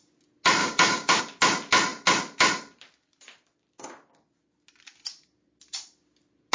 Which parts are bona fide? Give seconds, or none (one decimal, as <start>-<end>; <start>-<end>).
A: 0.0-0.6; 1.2-6.5